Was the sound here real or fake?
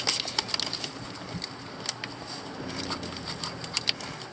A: real